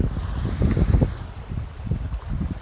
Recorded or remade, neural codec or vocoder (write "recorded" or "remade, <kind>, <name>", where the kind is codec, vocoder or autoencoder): recorded